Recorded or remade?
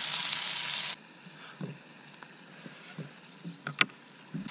recorded